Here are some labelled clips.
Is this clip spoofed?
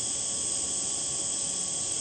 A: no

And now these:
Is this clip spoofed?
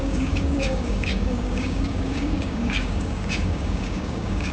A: yes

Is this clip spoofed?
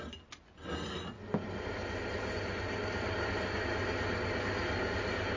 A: no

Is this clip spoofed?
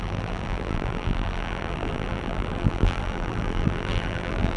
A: yes